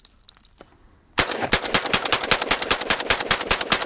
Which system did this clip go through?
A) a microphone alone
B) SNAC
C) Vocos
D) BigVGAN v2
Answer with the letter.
A